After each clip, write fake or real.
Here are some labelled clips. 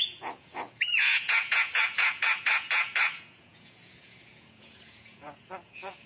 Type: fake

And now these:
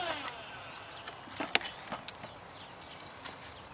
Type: real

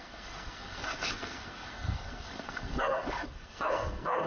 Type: fake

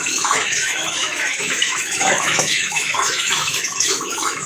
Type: fake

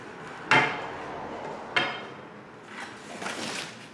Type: real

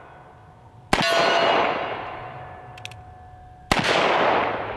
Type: real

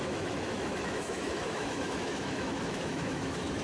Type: fake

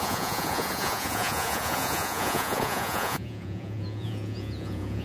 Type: fake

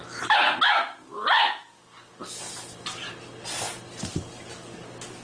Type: real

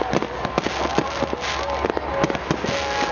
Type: real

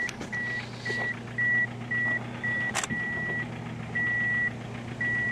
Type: real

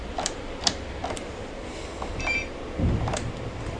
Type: fake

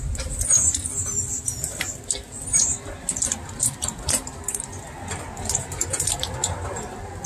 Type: real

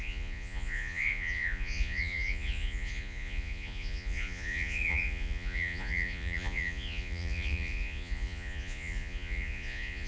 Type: fake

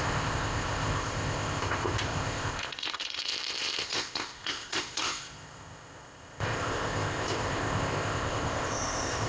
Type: fake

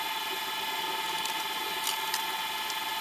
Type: real